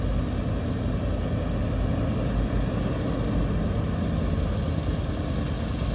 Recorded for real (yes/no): yes